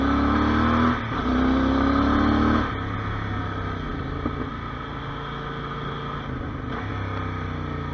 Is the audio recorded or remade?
recorded